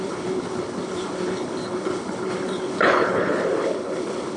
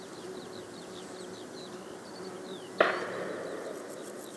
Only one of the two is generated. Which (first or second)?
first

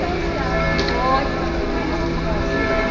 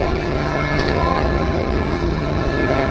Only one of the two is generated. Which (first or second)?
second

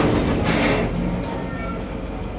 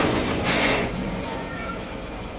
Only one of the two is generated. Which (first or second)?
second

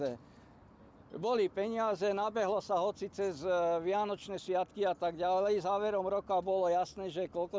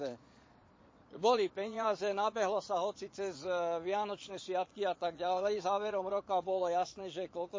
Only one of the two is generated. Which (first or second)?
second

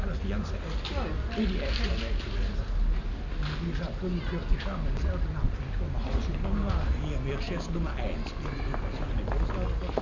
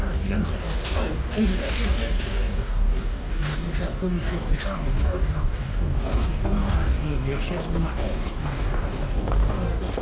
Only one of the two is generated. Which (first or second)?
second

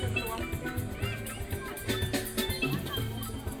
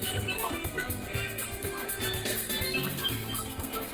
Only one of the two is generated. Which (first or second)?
second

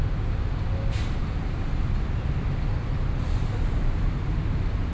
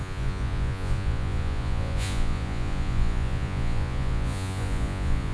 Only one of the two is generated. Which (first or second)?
second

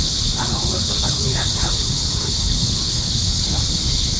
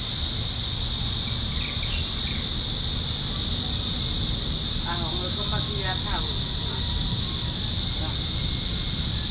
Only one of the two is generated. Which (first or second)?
first